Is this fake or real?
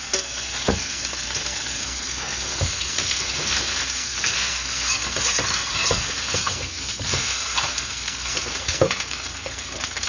fake